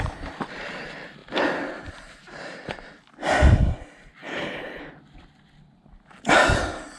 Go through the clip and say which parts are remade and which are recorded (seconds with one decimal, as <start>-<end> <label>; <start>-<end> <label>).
0.0-4.2 recorded; 4.2-4.8 remade; 4.8-7.0 recorded